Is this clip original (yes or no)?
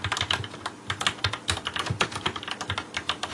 yes